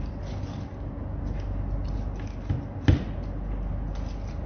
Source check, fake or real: real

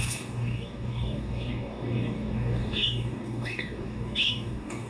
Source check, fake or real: fake